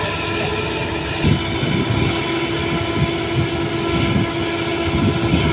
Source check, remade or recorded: recorded